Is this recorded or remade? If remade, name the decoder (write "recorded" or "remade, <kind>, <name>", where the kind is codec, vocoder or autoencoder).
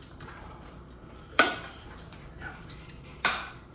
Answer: remade, vocoder, BigVGAN v2